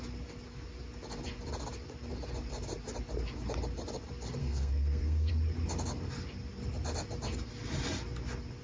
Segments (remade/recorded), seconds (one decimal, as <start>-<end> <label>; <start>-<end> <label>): 0.0-4.4 recorded; 4.4-5.3 remade; 5.3-8.6 recorded